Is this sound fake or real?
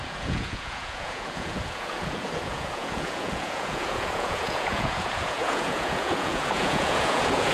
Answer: fake